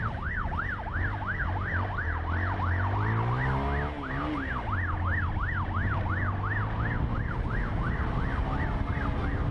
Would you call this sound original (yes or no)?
yes